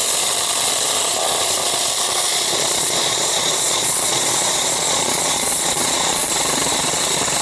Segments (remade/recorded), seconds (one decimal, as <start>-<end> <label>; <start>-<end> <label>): 0.0-2.3 recorded; 2.3-6.3 remade; 6.3-7.4 recorded